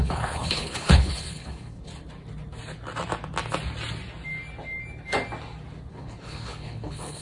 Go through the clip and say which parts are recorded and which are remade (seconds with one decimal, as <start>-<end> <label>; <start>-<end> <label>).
0.0-1.9 remade; 1.9-5.9 recorded; 5.9-7.2 remade